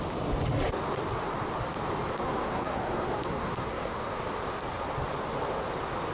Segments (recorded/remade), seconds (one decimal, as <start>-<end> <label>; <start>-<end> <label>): 0.0-2.1 recorded; 2.1-4.2 remade; 4.2-6.1 recorded